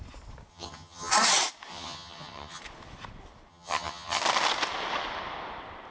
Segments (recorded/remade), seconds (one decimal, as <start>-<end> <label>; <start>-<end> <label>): 0.0-0.5 recorded; 0.5-1.1 remade; 1.1-1.7 recorded; 1.7-2.6 remade; 2.6-3.5 recorded; 3.5-4.2 remade; 4.2-5.9 recorded